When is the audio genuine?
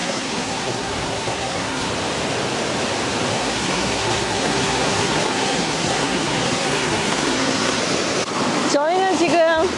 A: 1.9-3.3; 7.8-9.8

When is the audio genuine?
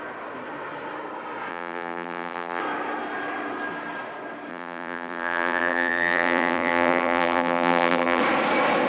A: 0.0-1.5; 2.6-4.5; 8.2-8.9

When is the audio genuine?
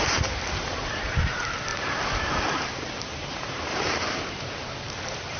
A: 1.7-2.4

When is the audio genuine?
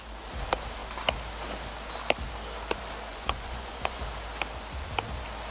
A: 0.0-3.1; 4.0-5.5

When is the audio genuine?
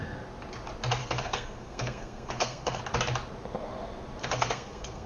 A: 0.0-1.0; 2.8-4.2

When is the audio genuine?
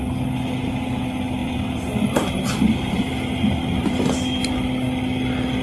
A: 0.0-1.4; 4.0-5.6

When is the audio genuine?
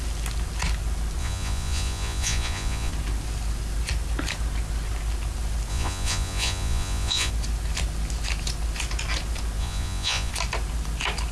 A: 0.0-1.2; 2.9-5.7; 7.3-9.6; 10.3-11.3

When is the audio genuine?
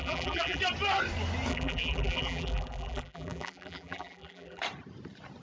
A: 0.6-1.5; 4.6-5.4